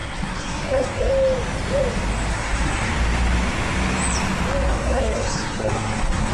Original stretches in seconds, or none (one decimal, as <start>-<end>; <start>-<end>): 1.1-2.3; 2.9-4.7